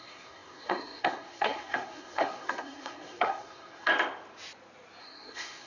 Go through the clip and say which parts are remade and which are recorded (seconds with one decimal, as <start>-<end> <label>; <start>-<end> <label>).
0.0-3.9 remade; 3.9-5.0 recorded; 5.0-5.7 remade